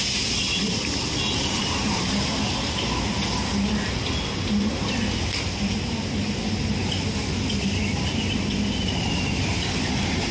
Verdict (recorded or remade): recorded